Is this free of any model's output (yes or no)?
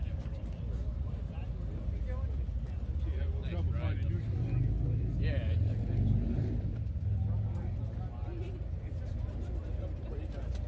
yes